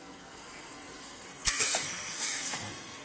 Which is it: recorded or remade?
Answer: remade